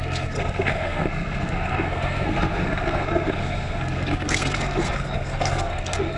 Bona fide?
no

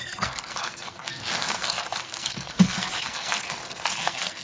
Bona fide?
no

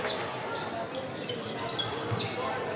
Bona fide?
yes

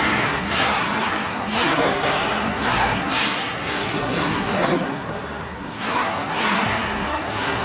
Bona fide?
no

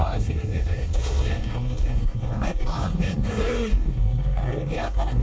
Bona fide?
no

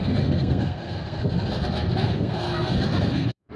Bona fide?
no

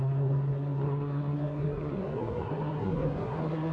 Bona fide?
no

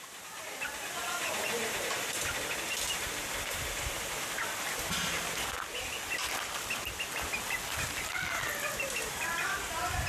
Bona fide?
yes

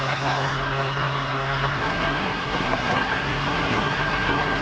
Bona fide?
no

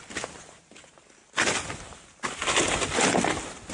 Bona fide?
yes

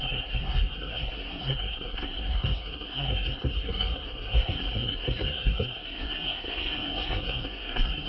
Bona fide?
no